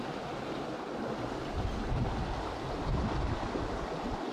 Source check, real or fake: real